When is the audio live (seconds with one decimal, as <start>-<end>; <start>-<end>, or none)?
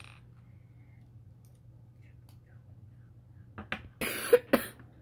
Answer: 0.0-5.0